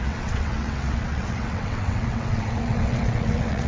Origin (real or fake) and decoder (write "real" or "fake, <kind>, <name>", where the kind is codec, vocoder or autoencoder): fake, vocoder, WaveNeXt